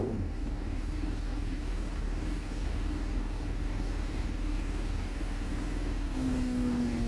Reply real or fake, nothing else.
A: fake